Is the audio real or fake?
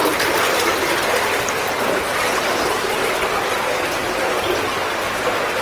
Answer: real